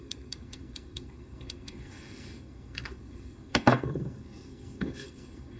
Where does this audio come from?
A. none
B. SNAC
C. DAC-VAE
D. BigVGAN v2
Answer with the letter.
B